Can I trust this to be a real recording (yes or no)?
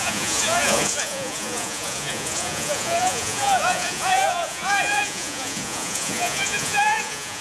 no